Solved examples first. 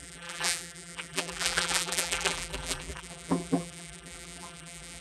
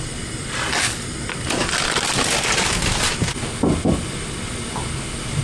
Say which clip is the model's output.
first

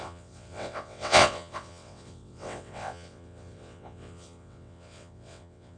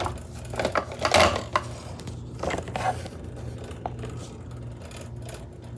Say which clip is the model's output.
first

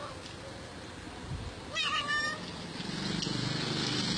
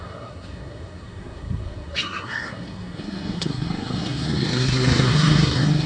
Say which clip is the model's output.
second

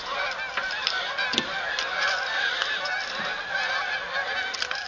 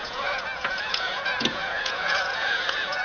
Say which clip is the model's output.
second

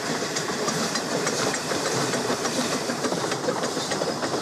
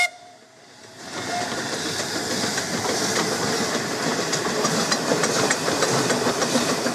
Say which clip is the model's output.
first